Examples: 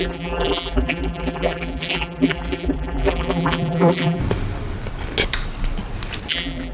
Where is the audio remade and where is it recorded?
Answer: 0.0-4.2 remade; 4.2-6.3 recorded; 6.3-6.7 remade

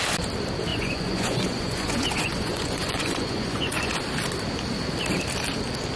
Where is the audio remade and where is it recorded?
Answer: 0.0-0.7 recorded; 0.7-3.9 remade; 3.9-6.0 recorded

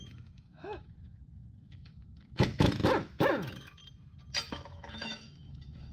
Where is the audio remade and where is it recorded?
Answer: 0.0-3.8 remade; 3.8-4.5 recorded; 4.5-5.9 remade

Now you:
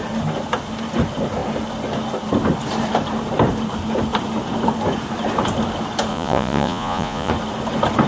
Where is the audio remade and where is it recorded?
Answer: 0.0-6.1 recorded; 6.1-7.3 remade; 7.3-8.1 recorded